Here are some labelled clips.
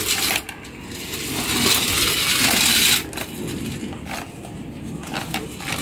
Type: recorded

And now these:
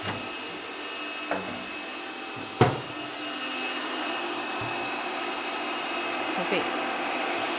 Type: recorded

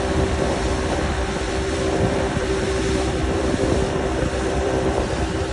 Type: remade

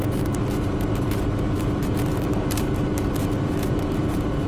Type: remade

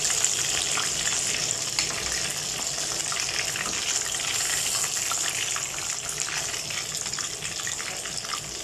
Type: recorded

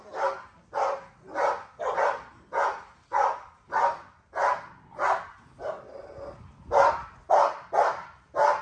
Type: recorded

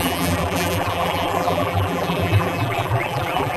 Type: remade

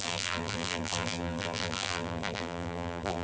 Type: remade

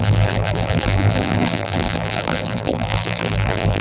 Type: remade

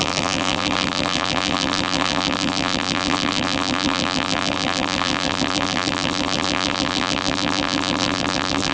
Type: remade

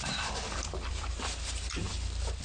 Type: remade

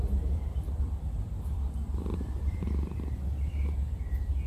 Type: remade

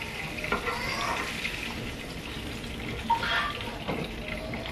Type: remade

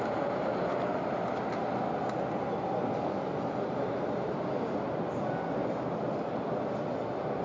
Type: recorded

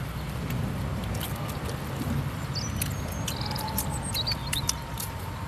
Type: remade